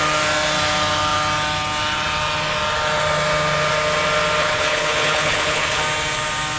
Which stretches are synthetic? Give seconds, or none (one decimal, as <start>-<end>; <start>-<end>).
4.4-5.8